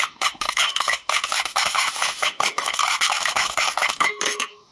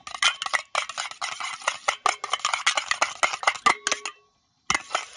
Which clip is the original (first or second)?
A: second